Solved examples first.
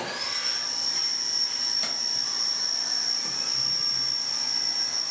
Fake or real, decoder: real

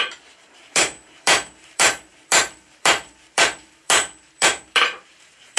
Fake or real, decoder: fake, vocoder, BigVGAN v2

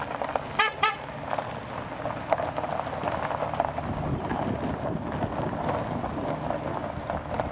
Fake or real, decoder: real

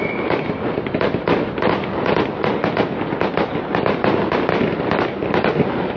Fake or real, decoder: real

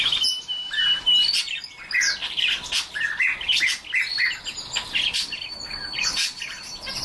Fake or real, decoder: real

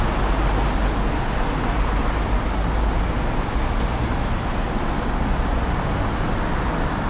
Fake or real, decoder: real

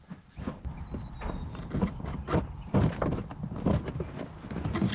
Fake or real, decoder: real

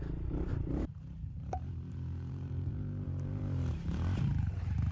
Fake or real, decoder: fake, vocoder, BigVGAN v2